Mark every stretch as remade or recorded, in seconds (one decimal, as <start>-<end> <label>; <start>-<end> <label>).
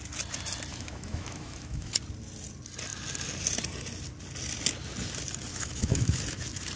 0.0-0.7 recorded; 0.7-1.9 remade; 1.9-5.5 recorded; 5.5-6.2 remade; 6.2-6.8 recorded